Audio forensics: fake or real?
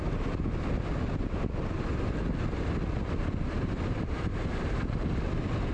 real